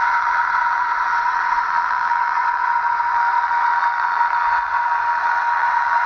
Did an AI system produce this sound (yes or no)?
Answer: yes